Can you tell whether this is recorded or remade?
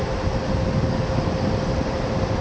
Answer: recorded